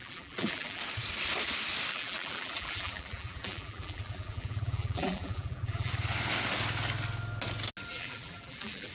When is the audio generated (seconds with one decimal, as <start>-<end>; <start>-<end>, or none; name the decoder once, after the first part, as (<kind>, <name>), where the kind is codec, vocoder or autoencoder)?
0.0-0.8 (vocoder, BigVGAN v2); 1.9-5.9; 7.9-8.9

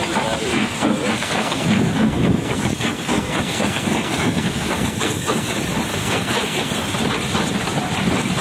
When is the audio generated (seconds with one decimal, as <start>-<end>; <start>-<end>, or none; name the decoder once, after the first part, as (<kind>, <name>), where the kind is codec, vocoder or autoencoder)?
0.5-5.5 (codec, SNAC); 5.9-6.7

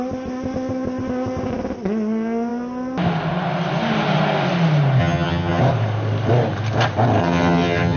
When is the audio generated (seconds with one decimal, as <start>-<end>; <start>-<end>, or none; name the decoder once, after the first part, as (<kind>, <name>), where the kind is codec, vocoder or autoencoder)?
5.0-5.6 (vocoder, HiFi-GAN); 7.2-8.0